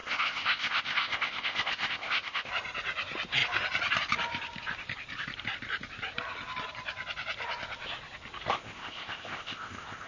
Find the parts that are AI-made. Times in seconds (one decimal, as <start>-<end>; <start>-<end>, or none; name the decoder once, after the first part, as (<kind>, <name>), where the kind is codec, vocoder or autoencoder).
0.0-2.5 (codec, ZipCodec); 8.5-10.1